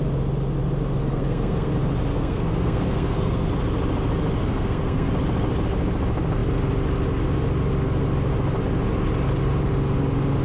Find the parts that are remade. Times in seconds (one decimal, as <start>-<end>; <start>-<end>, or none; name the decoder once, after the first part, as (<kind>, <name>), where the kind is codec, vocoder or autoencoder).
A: 1.1-1.7 (codec, SNAC); 2.1-3.5; 4.4-5.1